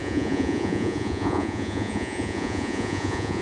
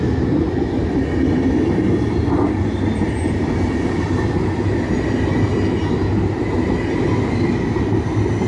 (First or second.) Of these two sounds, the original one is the second